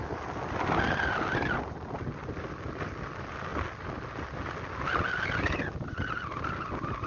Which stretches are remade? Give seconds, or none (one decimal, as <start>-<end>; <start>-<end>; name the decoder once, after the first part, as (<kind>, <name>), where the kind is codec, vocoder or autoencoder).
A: none